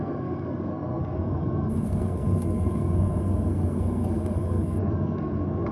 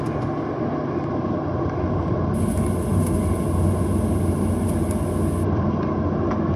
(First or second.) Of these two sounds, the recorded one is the second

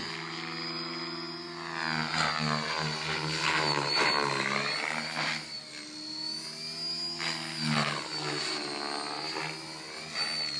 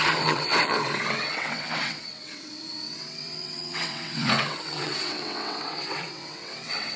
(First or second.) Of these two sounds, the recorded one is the first